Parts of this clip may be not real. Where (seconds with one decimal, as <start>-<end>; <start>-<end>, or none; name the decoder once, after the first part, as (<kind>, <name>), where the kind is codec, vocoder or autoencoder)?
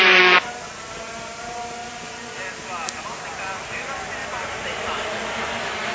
none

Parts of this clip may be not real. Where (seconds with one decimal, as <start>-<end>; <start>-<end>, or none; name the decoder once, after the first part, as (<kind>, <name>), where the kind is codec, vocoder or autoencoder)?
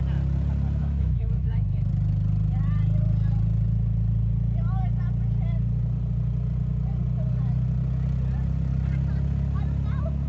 0.8-1.9 (autoencoder, DAC-VAE)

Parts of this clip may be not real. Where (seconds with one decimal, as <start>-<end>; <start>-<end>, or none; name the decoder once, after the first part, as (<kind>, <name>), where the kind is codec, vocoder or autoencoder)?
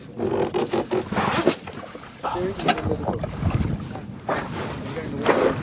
0.6-1.3 (autoencoder, DAC-VAE)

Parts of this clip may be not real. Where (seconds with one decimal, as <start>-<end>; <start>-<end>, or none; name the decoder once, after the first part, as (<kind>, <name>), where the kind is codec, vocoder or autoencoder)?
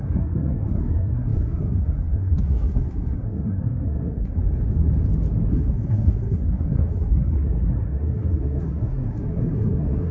0.0-4.4 (codec, SNAC); 5.5-10.1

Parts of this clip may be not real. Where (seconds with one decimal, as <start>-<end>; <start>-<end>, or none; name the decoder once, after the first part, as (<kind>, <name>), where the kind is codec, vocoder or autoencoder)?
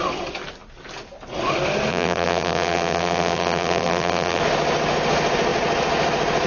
1.9-4.4 (vocoder, BigVGAN v2)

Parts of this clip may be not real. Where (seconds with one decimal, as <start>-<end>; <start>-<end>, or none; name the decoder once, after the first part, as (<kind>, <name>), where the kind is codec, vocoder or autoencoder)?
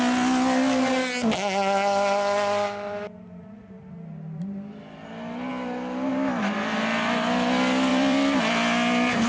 7.9-8.4 (vocoder, BigVGAN v2)